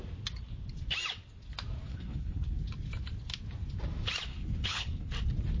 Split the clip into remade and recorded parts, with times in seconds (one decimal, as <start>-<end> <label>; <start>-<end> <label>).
0.0-1.9 recorded; 1.9-2.6 remade; 2.6-4.3 recorded; 4.3-5.1 remade; 5.1-5.6 recorded